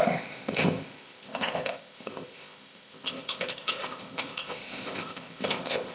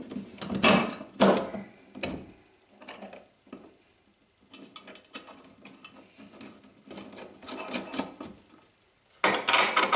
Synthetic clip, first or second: first